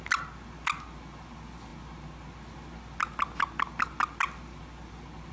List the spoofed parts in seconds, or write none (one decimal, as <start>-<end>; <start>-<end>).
none